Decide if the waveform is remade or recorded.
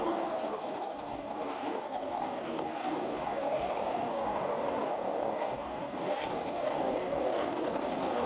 remade